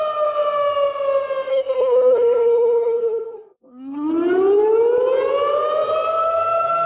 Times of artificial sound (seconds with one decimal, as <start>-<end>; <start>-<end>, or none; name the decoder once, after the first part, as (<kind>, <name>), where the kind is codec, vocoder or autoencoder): 1.5-4.1 (codec, SNAC)